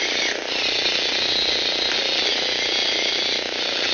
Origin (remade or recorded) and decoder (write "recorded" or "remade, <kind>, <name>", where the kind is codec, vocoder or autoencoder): recorded